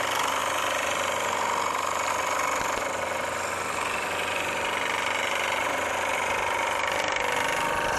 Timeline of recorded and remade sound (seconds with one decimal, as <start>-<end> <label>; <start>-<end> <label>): 0.0-8.0 recorded